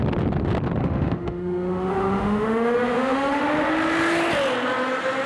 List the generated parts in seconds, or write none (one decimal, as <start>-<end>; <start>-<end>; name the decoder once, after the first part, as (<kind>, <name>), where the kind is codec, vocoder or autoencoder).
0.8-3.4 (autoencoder, DAC-VAE)